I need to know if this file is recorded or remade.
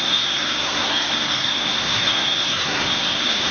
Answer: remade